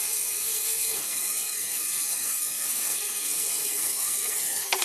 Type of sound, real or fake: fake